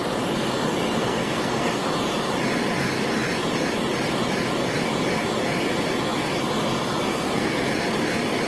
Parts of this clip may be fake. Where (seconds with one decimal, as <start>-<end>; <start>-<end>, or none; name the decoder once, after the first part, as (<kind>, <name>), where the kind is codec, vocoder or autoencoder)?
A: 1.0-1.9 (codec, SNAC); 7.1-7.7